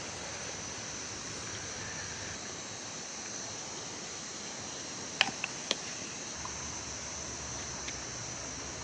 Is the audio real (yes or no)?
yes